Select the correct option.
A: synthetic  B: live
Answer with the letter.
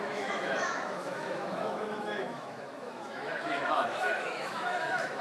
A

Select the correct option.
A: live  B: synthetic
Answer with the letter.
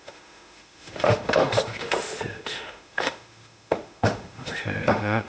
B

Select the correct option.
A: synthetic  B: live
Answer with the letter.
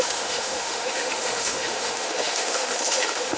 A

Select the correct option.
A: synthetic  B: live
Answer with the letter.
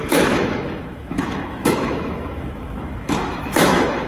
A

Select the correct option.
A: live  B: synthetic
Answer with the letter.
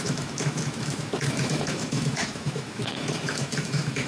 B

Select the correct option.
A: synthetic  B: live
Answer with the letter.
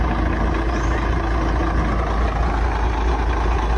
B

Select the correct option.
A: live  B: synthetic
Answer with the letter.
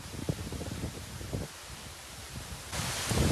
A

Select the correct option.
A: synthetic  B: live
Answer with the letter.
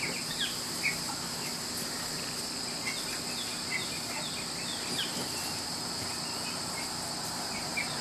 B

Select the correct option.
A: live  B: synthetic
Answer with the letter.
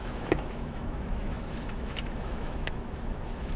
B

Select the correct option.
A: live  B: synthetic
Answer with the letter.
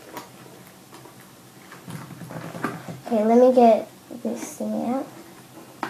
A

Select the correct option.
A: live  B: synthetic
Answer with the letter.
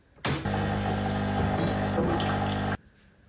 A